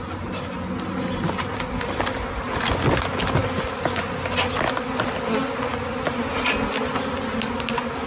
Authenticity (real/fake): real